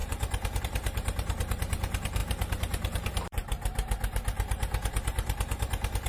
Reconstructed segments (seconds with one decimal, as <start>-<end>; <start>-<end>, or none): 0.0-6.1